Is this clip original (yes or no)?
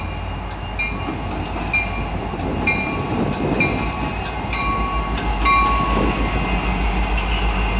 yes